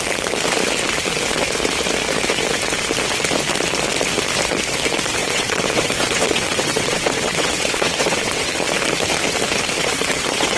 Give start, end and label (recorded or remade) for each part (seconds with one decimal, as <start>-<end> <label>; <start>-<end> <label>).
0.0-5.2 recorded; 5.2-8.5 remade; 8.5-9.8 recorded; 9.8-10.6 remade